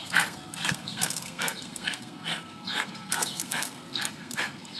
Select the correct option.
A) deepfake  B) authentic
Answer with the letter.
A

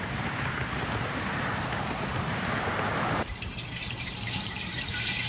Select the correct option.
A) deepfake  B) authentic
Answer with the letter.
A